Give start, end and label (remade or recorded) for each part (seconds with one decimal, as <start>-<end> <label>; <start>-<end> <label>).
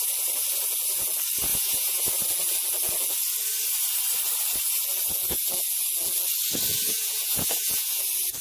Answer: 0.0-1.5 recorded; 1.5-2.1 remade; 2.1-6.7 recorded; 6.7-8.0 remade; 8.0-8.4 recorded